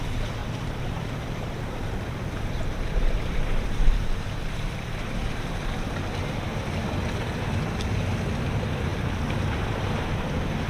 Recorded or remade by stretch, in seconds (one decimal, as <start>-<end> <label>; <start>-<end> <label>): 0.0-0.4 recorded; 0.4-4.5 remade; 4.5-10.7 recorded